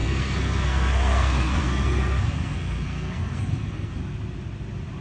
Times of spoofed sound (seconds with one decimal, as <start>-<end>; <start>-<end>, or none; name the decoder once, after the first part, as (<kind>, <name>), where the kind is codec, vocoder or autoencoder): 0.0-4.0 (codec, SNAC)